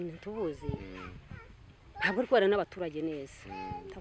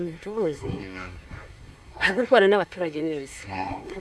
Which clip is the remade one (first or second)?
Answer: second